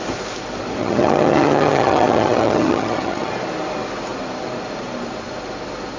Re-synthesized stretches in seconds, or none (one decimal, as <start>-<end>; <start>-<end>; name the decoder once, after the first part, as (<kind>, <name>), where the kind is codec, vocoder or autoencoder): 0.8-3.3 (vocoder, HiFi-GAN)